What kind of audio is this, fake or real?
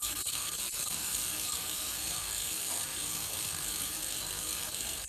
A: fake